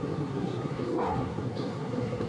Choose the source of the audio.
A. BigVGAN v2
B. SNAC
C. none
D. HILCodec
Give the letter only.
B